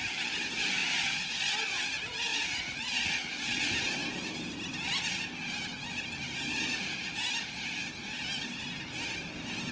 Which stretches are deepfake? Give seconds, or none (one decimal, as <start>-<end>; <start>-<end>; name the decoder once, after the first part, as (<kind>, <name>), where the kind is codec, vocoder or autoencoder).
0.8-1.5 (vocoder, Vocos); 2.3-3.7